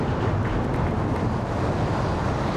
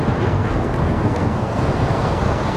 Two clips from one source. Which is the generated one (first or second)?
second